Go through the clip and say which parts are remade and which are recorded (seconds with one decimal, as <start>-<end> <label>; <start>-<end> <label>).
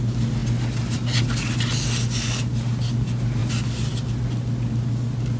0.0-5.4 recorded